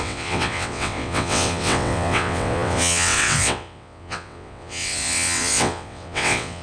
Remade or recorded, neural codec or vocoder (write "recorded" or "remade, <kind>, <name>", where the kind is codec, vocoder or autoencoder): remade, vocoder, WaveNeXt